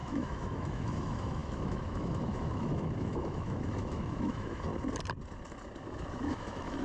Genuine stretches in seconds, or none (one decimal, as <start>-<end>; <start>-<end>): 4.7-5.8